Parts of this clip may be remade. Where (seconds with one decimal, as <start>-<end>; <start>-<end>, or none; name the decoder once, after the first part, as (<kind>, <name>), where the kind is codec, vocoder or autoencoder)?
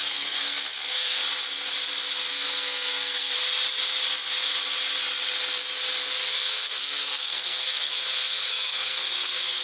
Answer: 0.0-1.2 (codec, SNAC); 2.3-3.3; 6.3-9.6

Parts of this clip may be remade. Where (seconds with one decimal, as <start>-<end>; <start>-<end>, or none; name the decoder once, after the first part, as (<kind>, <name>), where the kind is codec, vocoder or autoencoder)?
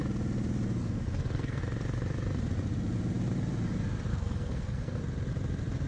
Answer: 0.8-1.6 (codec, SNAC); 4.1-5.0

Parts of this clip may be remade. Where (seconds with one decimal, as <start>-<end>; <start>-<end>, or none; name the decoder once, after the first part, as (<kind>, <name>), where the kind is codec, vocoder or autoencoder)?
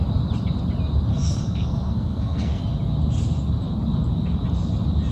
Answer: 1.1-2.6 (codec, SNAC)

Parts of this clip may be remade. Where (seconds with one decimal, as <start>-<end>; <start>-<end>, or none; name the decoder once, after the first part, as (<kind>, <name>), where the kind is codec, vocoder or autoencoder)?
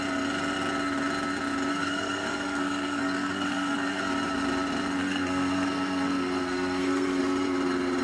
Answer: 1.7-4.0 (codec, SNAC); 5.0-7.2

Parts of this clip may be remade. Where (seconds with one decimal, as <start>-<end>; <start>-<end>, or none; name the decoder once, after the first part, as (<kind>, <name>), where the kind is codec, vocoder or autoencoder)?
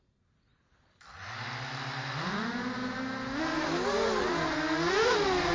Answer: none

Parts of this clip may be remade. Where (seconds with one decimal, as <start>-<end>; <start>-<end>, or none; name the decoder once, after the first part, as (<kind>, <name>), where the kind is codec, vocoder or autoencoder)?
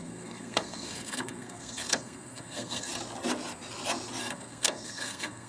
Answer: 0.0-2.9 (codec, SNAC); 4.2-5.5